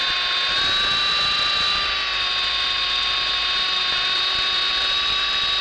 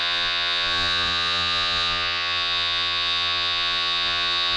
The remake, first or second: second